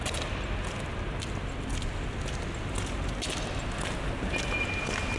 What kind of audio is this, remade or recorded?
recorded